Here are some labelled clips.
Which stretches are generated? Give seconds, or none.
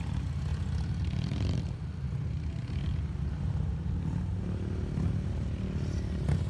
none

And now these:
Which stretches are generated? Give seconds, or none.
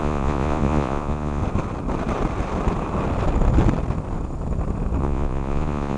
0.0-1.4 (vocoder, Vocos); 5.0-6.0